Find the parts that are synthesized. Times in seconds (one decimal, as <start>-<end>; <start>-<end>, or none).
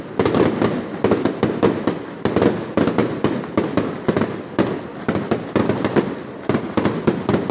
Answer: 3.0-4.2